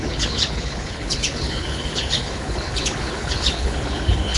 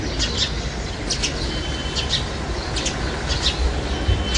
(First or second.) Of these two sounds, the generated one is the first